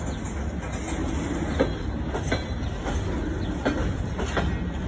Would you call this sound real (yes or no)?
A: yes